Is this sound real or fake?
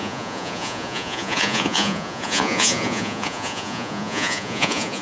fake